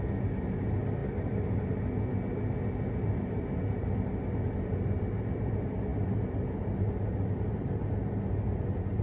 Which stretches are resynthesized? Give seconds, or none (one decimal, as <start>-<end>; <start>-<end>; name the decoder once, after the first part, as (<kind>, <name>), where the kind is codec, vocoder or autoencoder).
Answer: none